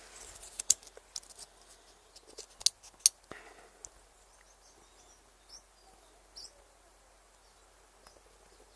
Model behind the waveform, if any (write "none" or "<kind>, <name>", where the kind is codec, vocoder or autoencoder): none